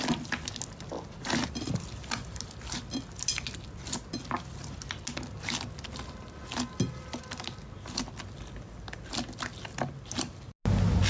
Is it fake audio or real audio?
real